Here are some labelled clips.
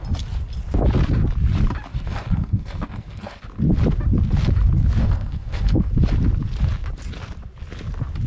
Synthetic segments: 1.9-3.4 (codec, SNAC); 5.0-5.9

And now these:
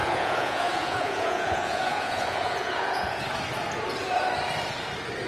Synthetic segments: 0.0-3.2 (vocoder, Vocos)

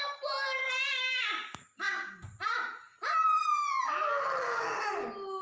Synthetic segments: 0.9-2.2 (codec, DAC); 4.4-4.9

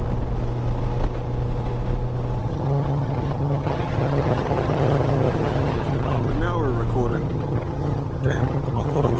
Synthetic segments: 2.4-6.3 (vocoder, HiFi-GAN); 7.1-9.2

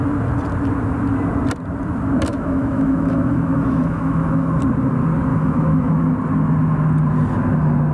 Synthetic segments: 2.3-4.6 (autoencoder, DAC-VAE); 5.3-6.1

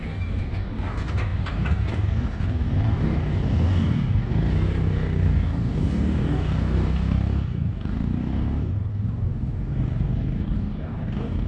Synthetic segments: 0.0-11.5 (codec, DAC)

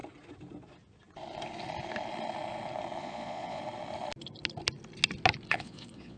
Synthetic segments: 3.0-3.6 (vocoder, Vocos); 5.5-6.2

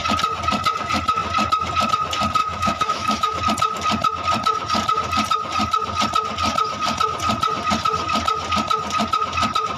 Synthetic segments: 2.4-3.4 (autoencoder, DAC-VAE)